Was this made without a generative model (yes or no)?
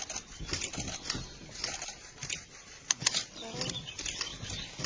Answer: yes